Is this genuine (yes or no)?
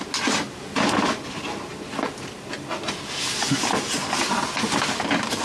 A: yes